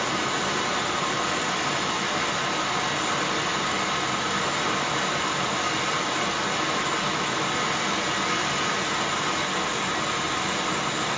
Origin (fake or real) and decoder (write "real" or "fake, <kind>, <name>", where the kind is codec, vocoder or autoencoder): real